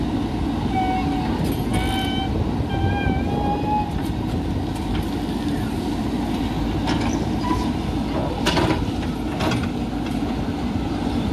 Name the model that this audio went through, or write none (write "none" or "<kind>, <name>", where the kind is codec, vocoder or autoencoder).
none